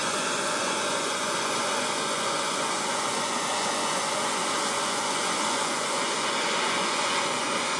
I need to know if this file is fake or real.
fake